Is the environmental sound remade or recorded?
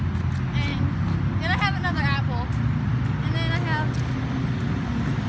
recorded